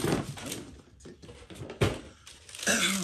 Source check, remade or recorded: recorded